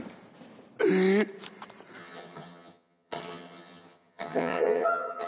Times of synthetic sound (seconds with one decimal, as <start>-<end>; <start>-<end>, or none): 2.0-5.3